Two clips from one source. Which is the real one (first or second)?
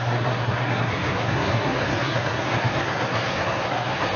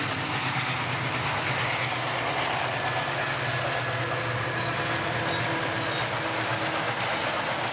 second